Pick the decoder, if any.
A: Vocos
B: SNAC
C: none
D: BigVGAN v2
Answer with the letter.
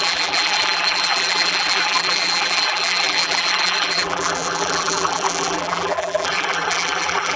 D